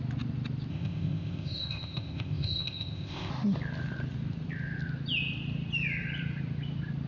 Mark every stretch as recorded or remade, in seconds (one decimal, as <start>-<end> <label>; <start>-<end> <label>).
0.0-0.7 recorded; 0.7-3.3 remade; 3.3-7.1 recorded